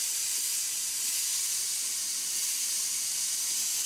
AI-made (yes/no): no